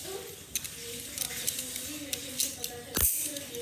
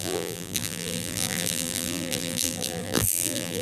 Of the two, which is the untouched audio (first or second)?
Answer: first